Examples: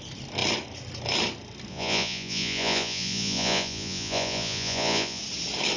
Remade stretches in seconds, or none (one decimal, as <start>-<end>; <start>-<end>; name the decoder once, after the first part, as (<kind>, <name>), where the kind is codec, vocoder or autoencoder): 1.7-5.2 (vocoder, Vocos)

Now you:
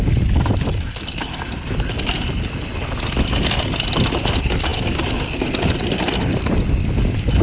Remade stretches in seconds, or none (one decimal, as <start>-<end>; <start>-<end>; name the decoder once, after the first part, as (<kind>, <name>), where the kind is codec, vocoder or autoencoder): none

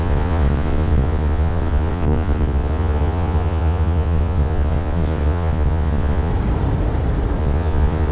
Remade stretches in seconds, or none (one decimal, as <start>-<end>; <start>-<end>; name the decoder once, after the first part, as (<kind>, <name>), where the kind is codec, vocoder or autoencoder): 0.0-6.3 (vocoder, Vocos); 7.4-8.1

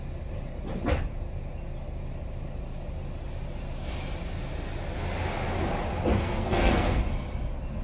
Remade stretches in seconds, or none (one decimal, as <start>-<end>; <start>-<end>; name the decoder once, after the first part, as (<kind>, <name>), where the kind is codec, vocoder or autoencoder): 6.1-7.0 (codec, SNAC)

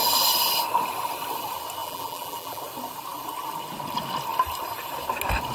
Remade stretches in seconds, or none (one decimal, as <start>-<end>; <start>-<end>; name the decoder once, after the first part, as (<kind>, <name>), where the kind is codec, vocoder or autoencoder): 1.8-2.6 (vocoder, BigVGAN v2)